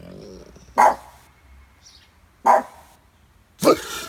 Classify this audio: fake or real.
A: real